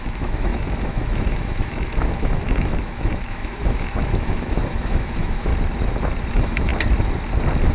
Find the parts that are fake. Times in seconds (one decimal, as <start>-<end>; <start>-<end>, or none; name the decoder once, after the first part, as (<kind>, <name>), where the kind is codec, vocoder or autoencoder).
0.0-5.5 (autoencoder, DAC-VAE); 6.3-6.7